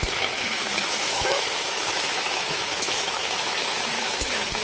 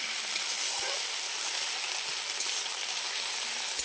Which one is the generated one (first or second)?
first